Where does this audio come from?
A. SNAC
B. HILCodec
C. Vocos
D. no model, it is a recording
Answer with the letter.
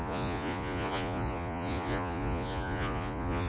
C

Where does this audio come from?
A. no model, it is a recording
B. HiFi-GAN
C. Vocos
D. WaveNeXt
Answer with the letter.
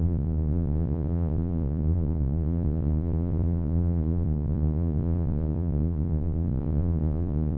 C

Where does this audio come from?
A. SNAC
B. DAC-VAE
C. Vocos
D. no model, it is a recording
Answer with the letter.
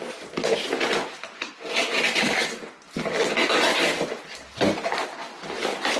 D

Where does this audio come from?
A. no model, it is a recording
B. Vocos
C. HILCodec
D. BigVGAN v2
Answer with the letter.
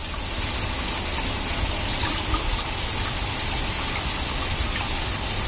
A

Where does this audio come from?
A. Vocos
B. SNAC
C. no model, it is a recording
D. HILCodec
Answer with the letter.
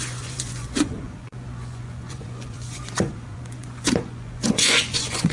A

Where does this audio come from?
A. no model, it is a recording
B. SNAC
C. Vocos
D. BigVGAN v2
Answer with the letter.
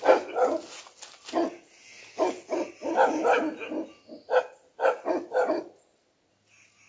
A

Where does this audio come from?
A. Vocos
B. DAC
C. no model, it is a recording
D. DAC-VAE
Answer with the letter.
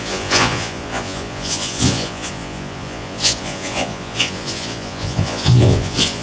A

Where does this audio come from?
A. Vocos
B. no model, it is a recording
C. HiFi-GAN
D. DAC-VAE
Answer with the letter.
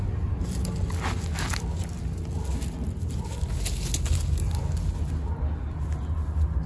B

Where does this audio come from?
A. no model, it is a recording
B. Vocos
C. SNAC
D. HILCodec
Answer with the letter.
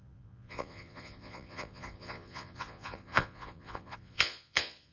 B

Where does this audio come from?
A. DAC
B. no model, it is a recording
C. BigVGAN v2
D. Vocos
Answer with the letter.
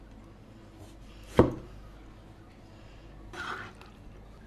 B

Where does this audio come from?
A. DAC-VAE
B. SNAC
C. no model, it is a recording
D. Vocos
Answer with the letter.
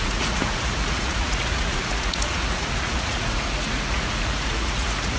D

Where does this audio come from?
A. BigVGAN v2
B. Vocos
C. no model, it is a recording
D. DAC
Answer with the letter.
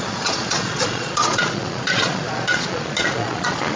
B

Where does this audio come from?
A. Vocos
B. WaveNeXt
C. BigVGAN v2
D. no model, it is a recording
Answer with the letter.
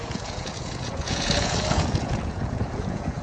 A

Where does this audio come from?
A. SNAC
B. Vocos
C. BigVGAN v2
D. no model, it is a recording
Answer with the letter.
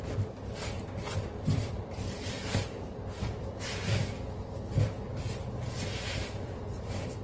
D